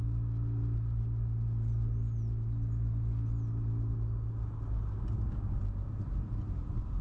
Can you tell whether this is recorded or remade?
recorded